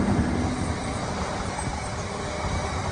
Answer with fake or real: real